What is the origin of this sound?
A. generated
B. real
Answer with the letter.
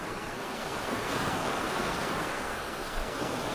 A